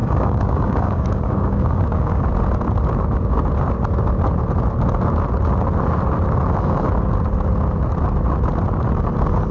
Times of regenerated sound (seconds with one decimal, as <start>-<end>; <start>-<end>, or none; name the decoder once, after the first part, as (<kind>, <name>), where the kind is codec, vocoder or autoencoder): 0.0-2.3 (codec, DAC)